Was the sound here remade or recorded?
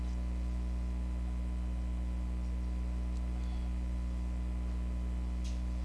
recorded